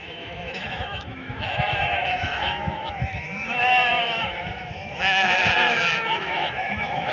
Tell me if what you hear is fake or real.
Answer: fake